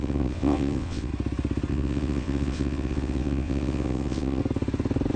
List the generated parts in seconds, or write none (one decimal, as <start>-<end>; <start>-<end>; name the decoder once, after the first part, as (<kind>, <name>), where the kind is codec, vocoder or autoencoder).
0.0-1.1 (vocoder, WaveNeXt); 1.7-4.4